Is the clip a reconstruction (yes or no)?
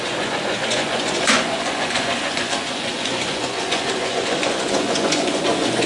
yes